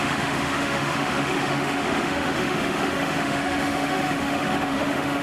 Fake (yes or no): yes